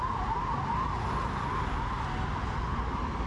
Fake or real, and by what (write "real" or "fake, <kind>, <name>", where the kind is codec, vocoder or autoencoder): real